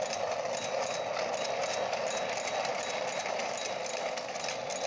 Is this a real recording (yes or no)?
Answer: yes